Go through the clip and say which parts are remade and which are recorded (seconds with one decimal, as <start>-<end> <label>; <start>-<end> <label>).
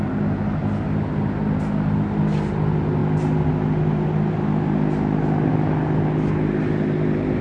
0.0-7.4 recorded